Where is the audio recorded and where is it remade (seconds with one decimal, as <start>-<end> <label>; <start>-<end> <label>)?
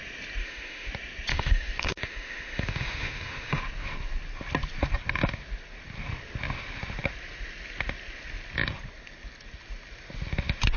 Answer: 0.0-0.4 recorded; 0.4-0.9 remade; 0.9-1.3 recorded; 1.3-3.6 remade; 3.6-10.8 recorded